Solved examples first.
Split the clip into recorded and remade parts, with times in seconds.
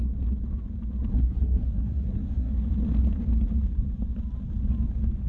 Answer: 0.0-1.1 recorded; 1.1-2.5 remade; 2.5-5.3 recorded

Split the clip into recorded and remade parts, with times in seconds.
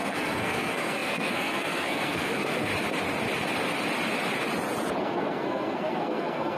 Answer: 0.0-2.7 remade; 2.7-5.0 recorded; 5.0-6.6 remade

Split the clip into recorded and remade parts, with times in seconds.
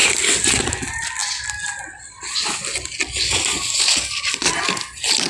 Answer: 0.0-5.3 recorded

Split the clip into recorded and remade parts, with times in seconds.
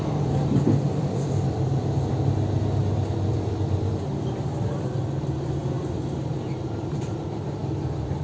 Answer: 0.0-5.6 remade; 5.6-6.3 recorded; 6.3-8.2 remade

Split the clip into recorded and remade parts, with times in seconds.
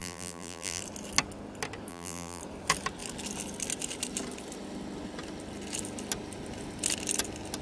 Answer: 0.0-0.8 remade; 0.8-1.9 recorded; 1.9-2.4 remade; 2.4-7.6 recorded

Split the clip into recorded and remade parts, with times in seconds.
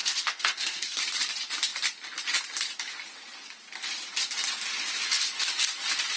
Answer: 0.0-1.0 remade; 1.0-6.2 recorded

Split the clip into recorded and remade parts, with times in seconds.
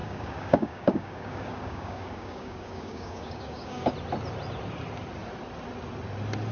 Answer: 0.0-3.9 remade; 3.9-6.5 recorded